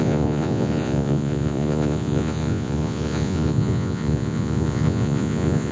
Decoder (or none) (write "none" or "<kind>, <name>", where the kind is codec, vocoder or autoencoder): vocoder, Vocos